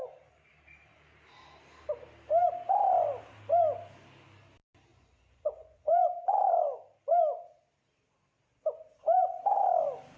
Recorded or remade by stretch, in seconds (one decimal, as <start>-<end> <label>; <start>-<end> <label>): 0.0-4.9 recorded; 4.9-6.4 remade; 6.4-10.2 recorded